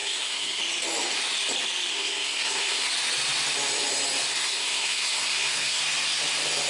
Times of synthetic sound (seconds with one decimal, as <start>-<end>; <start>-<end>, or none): 0.0-0.6; 1.9-2.9; 4.3-5.8